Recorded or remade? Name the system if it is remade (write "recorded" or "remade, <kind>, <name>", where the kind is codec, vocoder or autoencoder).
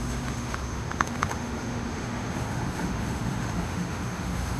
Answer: remade, autoencoder, DAC-VAE